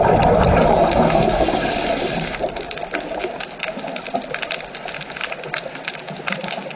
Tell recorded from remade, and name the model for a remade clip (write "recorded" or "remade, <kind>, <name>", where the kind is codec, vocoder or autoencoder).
recorded